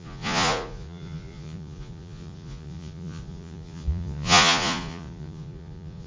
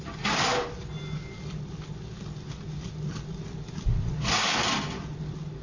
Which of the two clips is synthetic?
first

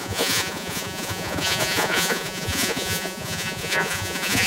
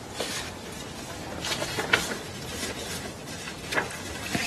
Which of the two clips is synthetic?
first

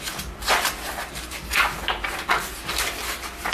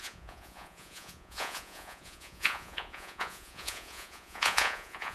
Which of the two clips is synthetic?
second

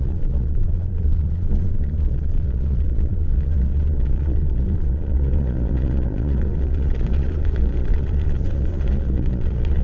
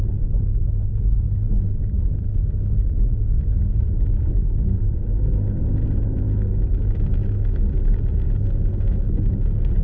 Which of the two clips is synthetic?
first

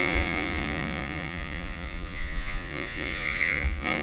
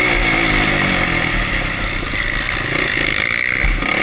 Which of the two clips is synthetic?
first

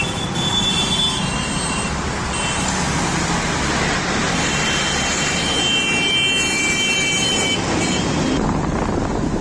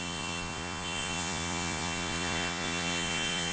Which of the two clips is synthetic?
second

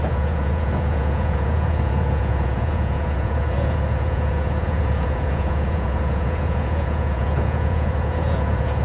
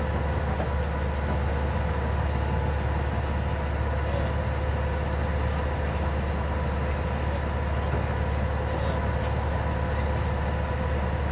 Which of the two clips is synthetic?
first